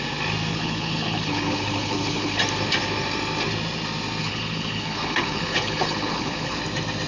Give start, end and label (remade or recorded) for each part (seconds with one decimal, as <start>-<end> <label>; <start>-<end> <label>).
0.0-0.5 recorded; 0.5-2.4 remade; 2.4-4.2 recorded; 4.2-6.6 remade; 6.6-7.1 recorded